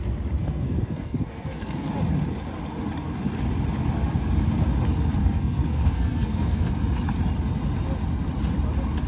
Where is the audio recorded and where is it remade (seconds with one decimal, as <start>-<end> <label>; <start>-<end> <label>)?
0.0-0.4 recorded; 0.4-1.9 remade; 1.9-5.2 recorded; 5.2-6.7 remade; 6.7-9.1 recorded